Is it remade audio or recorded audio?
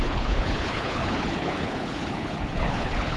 remade